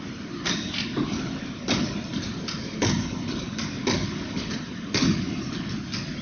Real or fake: real